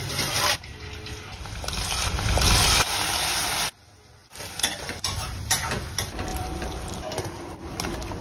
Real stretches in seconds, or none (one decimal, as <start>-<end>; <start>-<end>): 0.0-6.3; 7.7-8.2